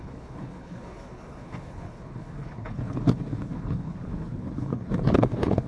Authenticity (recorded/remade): remade